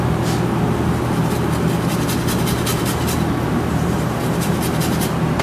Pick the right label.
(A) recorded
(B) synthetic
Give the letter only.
A